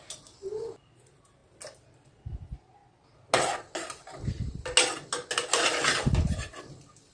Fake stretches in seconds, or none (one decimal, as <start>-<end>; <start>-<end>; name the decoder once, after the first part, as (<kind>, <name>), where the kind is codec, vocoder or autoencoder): none